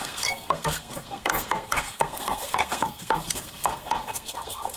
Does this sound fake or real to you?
fake